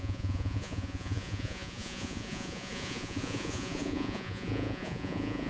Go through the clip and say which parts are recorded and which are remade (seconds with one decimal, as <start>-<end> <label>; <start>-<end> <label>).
0.0-5.5 remade